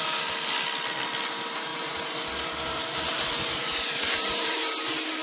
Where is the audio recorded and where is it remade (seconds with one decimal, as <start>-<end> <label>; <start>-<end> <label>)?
0.0-1.7 recorded; 1.7-4.8 remade; 4.8-5.2 recorded